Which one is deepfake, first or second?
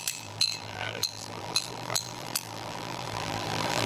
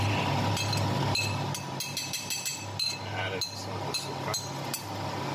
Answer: first